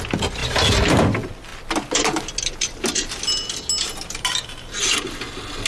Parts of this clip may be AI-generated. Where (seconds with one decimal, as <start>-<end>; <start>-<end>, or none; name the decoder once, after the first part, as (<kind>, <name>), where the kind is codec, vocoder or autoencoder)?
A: none